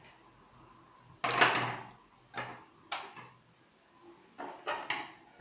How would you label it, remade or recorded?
recorded